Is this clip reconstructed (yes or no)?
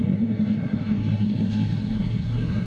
yes